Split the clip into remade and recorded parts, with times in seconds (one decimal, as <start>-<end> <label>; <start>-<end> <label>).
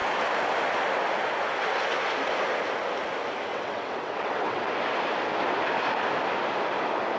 0.0-3.5 recorded; 3.5-4.7 remade; 4.7-7.2 recorded